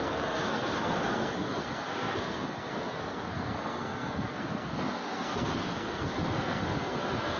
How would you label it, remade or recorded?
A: remade